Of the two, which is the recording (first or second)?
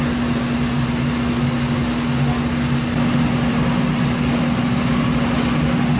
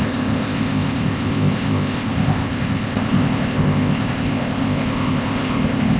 first